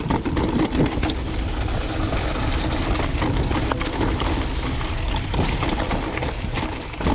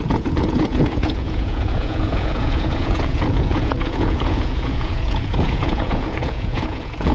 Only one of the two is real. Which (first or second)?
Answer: first